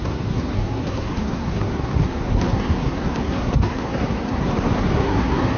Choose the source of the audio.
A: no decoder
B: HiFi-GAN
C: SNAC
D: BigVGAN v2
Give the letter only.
C